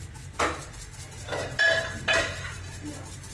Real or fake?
real